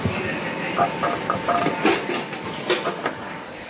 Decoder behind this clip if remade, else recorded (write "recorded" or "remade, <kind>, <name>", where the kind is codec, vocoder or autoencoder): recorded